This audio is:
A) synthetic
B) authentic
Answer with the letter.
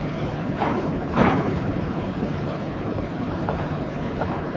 A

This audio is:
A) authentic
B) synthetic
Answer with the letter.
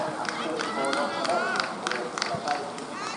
A